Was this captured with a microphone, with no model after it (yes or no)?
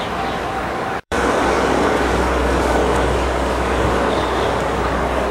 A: no